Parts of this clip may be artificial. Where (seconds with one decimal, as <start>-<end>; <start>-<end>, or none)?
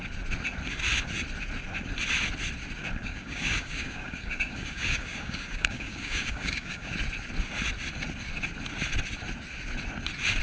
3.0-6.9